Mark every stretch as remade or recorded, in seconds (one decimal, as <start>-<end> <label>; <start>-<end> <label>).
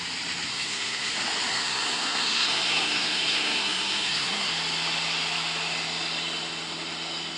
0.0-0.5 recorded; 0.5-1.1 remade; 1.1-1.5 recorded; 1.5-4.5 remade; 4.5-7.4 recorded